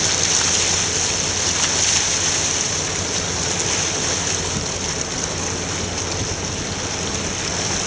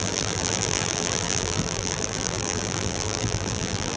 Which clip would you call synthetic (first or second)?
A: second